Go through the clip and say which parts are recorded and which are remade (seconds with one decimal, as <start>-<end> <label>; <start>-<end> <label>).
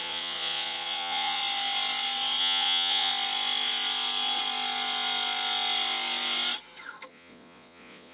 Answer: 0.0-1.4 remade; 1.4-2.4 recorded; 2.4-3.1 remade; 3.1-7.1 recorded; 7.1-8.1 remade